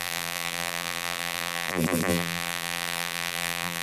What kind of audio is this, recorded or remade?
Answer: remade